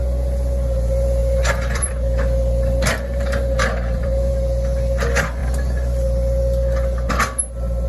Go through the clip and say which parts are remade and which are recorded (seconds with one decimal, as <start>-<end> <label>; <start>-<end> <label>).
0.0-1.2 recorded; 1.2-4.3 remade; 4.3-7.9 recorded